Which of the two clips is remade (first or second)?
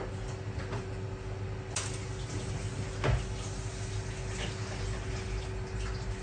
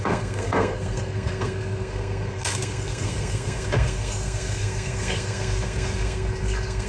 second